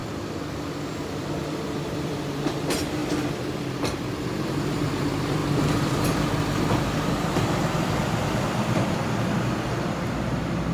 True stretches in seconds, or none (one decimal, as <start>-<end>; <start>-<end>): 3.0-4.1